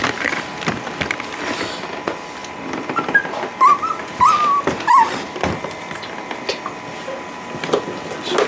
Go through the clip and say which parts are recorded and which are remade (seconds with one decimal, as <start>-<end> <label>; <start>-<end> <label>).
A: 0.0-8.5 recorded